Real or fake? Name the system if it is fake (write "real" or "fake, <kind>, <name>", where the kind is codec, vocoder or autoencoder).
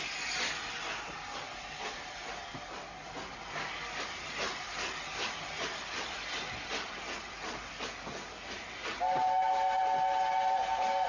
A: real